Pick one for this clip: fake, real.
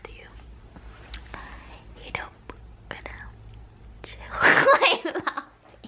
real